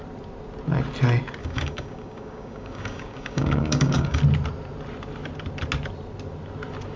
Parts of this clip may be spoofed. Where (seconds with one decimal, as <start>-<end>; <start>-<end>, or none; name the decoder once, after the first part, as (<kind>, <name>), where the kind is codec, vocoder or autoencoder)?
1.4-4.2 (codec, DAC)